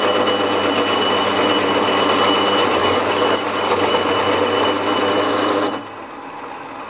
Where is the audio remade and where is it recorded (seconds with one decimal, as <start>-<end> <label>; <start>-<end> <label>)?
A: 0.0-2.8 recorded; 2.8-3.9 remade; 3.9-6.9 recorded